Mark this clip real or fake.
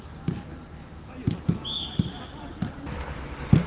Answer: real